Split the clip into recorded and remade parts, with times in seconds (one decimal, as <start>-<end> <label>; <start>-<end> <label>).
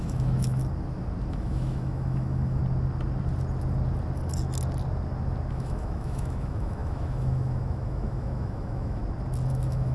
0.0-0.6 remade; 0.6-1.3 recorded; 1.3-2.6 remade; 2.6-5.5 recorded; 5.5-9.0 remade; 9.0-9.5 recorded; 9.5-9.9 remade